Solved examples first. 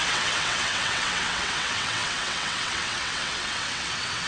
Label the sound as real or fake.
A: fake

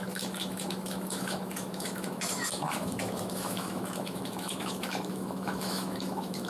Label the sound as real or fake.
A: fake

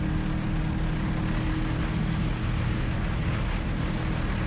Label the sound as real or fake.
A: real